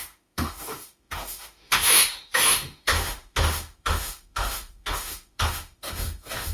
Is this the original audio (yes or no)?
no